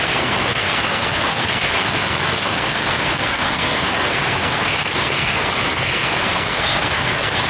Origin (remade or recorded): remade